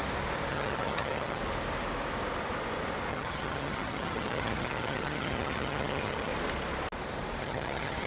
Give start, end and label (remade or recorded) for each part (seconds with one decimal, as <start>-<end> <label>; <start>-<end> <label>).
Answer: 0.0-0.5 recorded; 0.5-1.4 remade; 1.4-3.1 recorded; 3.1-6.3 remade; 6.3-7.4 recorded; 7.4-8.1 remade